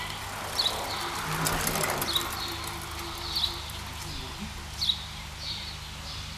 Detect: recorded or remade recorded